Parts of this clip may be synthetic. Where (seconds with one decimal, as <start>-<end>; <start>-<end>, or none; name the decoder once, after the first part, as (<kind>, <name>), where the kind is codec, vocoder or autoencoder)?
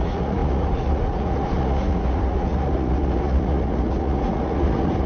0.0-5.1 (vocoder, Vocos)